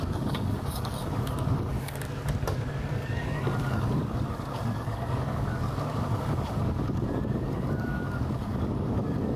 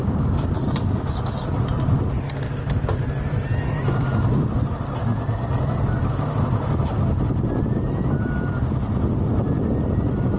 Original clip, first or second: second